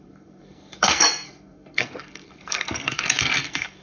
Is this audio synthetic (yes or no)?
yes